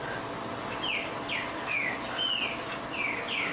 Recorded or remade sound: recorded